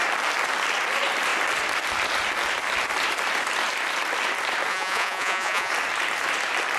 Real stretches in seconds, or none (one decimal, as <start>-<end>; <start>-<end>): 0.0-4.7; 5.7-6.8